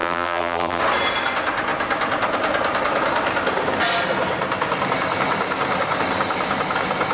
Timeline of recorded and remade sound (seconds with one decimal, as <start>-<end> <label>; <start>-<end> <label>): 0.0-0.8 remade; 0.8-7.1 recorded